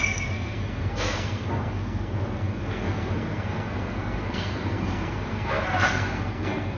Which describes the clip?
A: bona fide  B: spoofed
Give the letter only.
B